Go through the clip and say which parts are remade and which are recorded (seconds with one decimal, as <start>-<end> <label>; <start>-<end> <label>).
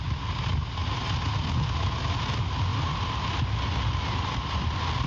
0.0-5.1 recorded